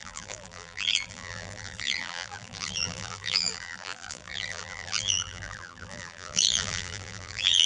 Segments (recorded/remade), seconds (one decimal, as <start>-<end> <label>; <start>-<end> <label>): 0.0-7.7 remade